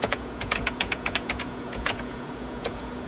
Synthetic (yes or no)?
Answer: yes